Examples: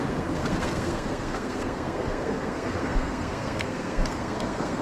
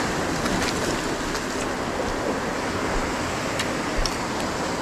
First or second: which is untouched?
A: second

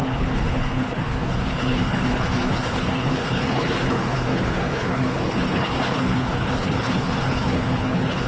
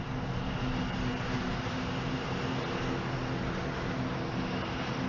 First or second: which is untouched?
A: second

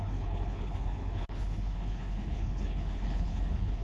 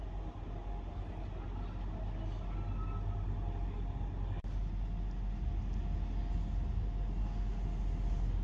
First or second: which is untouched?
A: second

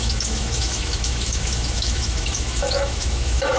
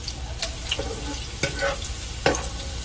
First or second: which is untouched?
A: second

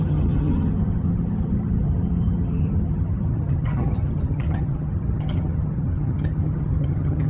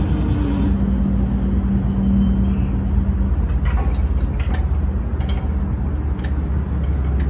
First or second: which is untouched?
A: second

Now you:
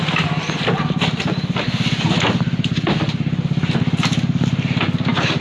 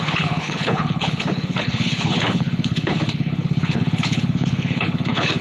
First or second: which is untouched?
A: first